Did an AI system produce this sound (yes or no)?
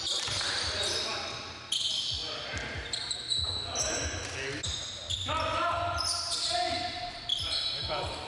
no